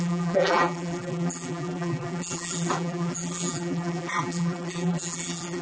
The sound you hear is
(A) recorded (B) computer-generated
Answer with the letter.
B